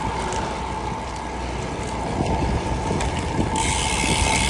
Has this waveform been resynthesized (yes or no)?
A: no